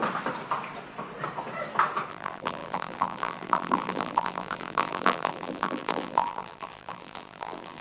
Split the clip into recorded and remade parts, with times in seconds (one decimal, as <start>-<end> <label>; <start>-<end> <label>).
0.0-2.1 recorded; 2.1-7.8 remade